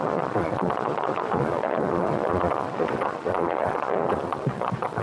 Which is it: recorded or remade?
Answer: remade